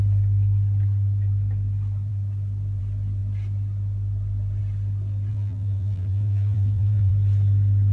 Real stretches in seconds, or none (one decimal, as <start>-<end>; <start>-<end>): 0.0-5.3; 7.1-7.9